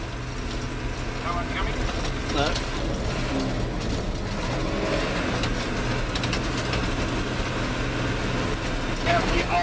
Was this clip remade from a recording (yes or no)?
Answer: no